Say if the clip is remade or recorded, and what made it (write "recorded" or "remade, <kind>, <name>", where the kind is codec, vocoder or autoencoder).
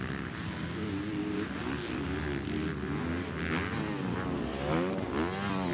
recorded